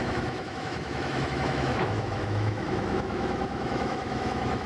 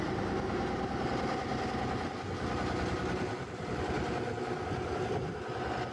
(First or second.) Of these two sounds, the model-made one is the first